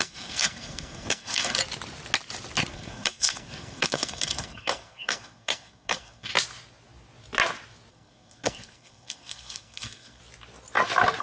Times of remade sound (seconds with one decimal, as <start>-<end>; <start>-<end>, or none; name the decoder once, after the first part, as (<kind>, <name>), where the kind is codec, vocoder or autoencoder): 0.0-1.6 (codec, SNAC); 2.7-6.3; 7.9-10.2